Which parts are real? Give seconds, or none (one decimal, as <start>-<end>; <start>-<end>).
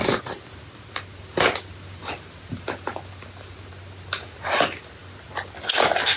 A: 0.0-6.2